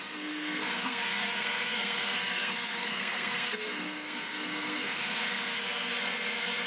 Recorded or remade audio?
remade